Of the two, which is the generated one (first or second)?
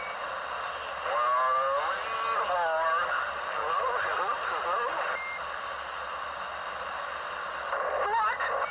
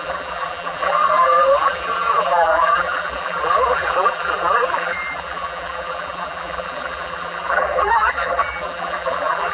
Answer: second